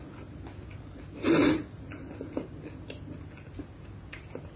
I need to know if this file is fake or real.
real